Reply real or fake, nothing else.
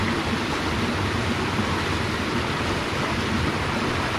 real